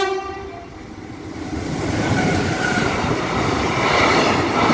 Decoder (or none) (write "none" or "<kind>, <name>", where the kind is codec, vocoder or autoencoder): vocoder, BigVGAN v2